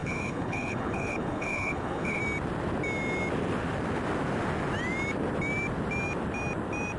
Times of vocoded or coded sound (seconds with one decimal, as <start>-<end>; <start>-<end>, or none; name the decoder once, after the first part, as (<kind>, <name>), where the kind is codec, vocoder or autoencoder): 0.0-2.2 (codec, HILCodec)